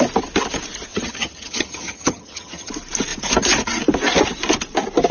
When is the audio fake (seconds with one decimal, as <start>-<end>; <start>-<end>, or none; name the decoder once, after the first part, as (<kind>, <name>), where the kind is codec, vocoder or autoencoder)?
0.9-2.7 (vocoder, HiFi-GAN)